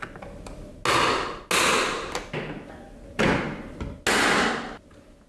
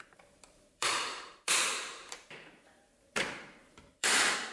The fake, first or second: second